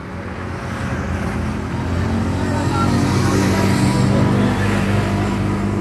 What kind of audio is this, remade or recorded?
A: recorded